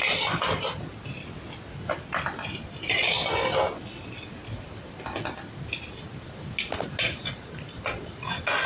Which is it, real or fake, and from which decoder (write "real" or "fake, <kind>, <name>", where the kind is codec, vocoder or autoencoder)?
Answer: real